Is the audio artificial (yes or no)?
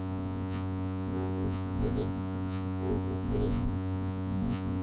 yes